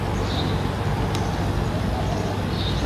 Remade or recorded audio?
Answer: recorded